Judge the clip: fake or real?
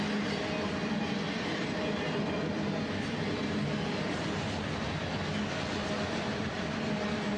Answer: real